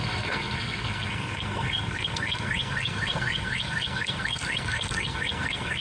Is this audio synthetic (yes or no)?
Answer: yes